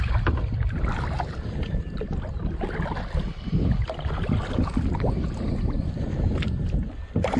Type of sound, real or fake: real